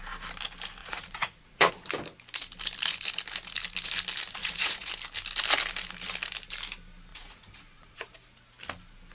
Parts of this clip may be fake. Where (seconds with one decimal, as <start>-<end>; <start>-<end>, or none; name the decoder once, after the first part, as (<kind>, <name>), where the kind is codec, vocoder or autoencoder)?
0.8-1.7 (vocoder, Vocos); 4.4-4.9; 7.1-8.0